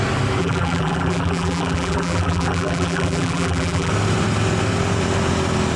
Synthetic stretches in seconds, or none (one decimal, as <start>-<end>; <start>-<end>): 0.4-3.9